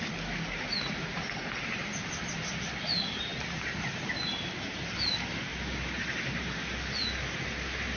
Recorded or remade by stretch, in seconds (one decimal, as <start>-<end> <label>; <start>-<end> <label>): 0.0-8.0 recorded